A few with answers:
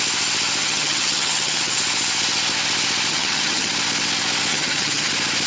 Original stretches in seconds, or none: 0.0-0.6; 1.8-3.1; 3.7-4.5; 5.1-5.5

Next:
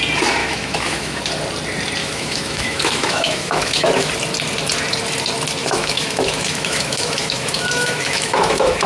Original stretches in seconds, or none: 0.0-0.4; 1.2-2.0; 4.1-5.6

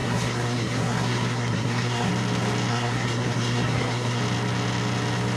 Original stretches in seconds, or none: 2.1-2.7; 4.2-5.4

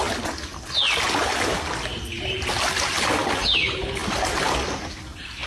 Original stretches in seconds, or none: 0.0-5.5

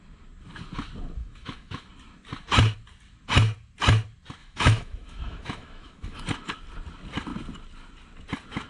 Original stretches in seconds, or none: 0.0-1.2; 1.9-4.4; 6.2-8.7

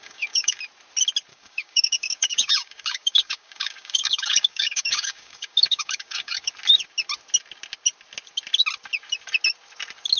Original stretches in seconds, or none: 0.6-1.3; 6.5-10.2

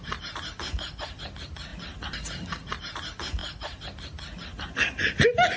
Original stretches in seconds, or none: 0.0-5.6

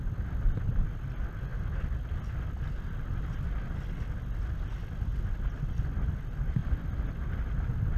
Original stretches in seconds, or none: 0.0-6.6